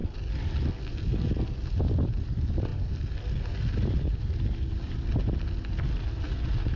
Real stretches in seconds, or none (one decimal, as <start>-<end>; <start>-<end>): 0.0-6.8